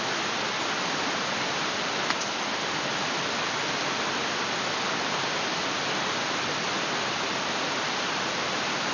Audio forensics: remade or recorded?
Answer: recorded